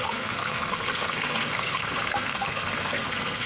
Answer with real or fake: fake